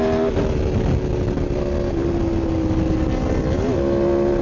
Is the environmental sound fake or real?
real